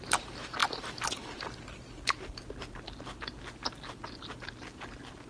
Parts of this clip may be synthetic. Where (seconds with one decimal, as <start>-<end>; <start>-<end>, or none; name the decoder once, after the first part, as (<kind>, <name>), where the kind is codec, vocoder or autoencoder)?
none